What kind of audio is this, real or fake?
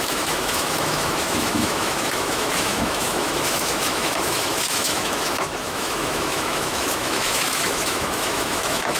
fake